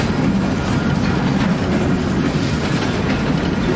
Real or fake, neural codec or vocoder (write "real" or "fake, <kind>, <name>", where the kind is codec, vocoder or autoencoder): real